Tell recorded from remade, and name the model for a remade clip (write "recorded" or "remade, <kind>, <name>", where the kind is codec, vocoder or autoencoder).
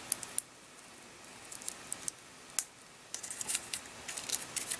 recorded